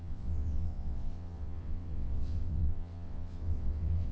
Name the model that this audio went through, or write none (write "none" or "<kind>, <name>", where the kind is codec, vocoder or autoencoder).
vocoder, WaveNeXt